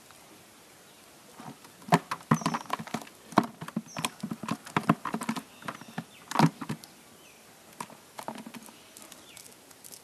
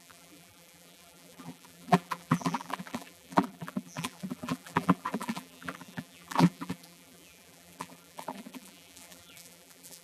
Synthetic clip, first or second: second